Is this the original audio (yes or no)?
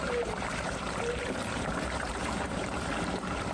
no